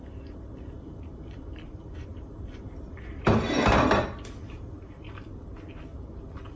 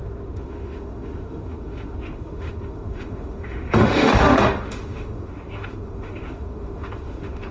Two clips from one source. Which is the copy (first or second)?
second